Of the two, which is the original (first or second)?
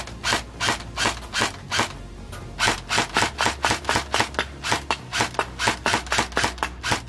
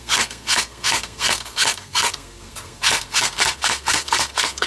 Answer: first